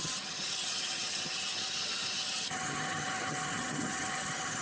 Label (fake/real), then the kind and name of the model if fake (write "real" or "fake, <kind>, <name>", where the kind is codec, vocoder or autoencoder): fake, vocoder, HiFi-GAN